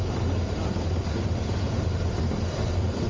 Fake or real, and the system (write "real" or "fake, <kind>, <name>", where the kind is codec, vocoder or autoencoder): fake, vocoder, BigVGAN v2